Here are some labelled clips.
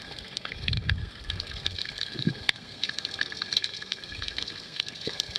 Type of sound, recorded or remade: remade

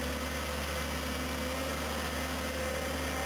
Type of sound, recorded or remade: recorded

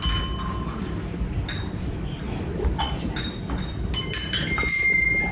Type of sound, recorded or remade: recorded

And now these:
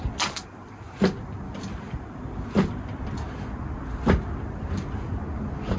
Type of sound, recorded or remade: recorded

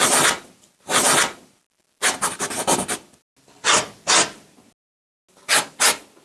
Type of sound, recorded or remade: recorded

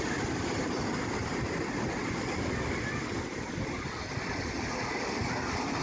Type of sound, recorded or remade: recorded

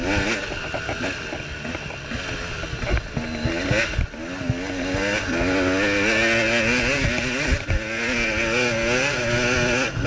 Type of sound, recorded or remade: recorded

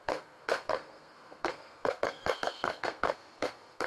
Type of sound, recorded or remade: remade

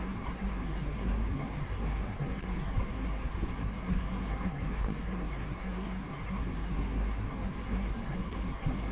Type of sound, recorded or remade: remade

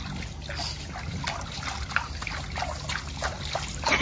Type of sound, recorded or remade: recorded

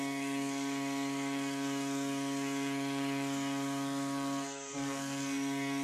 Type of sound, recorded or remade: remade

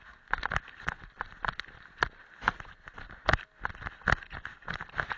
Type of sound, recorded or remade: recorded